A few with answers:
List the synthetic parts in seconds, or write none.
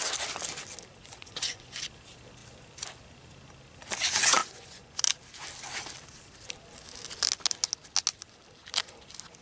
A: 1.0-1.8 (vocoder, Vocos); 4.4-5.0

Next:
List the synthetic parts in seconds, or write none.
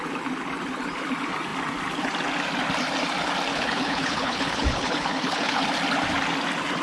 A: 3.5-5.6 (codec, HILCodec)